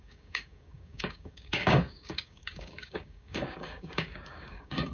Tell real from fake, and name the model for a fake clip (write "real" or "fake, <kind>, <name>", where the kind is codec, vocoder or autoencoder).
fake, codec, DAC